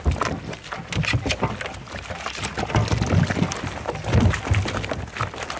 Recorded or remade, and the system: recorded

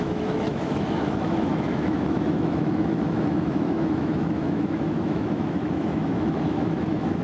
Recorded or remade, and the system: remade, autoencoder, DAC-VAE